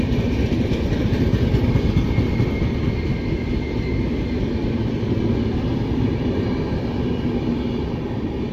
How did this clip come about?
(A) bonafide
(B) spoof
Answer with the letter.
A